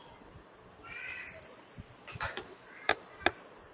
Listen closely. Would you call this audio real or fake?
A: real